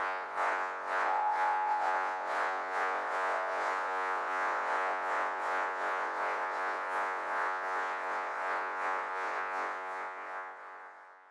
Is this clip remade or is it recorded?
remade